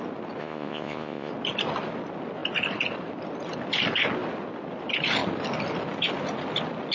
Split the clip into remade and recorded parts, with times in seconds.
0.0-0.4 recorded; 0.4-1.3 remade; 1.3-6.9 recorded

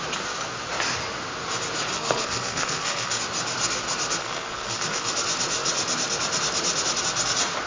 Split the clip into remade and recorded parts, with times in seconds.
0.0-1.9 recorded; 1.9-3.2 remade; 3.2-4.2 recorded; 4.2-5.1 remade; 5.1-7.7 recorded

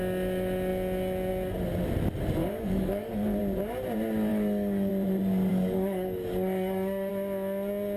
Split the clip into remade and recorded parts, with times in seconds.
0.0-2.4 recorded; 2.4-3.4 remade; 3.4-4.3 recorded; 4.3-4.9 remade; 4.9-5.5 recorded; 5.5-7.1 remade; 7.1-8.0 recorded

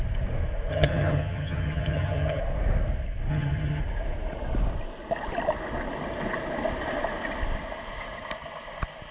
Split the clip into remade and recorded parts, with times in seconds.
0.0-0.7 recorded; 0.7-2.4 remade; 2.4-3.3 recorded; 3.3-3.8 remade; 3.8-9.1 recorded

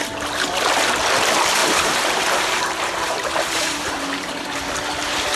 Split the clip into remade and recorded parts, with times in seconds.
0.0-1.6 recorded; 1.6-3.9 remade; 3.9-5.4 recorded

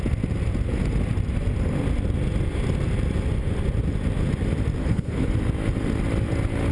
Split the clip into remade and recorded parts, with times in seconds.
0.0-4.8 recorded; 4.8-5.3 remade; 5.3-6.7 recorded